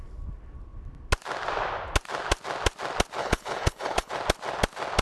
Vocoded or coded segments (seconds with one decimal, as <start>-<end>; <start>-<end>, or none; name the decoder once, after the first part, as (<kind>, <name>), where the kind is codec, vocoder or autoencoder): 3.2-4.1 (codec, HILCodec)